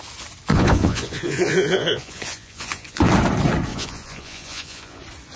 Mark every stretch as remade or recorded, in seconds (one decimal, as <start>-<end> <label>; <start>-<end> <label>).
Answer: 0.0-0.5 recorded; 0.5-3.1 remade; 3.1-3.7 recorded; 3.7-5.0 remade; 5.0-5.4 recorded